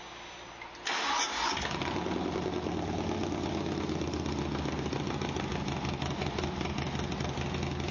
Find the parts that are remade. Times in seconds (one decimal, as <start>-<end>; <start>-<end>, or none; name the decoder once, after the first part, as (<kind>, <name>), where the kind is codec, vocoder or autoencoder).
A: none